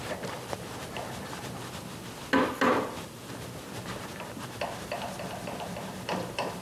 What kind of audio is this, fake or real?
fake